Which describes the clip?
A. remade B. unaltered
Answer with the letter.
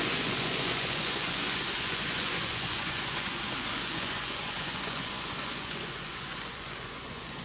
A